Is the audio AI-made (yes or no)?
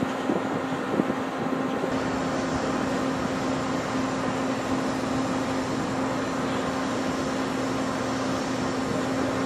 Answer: no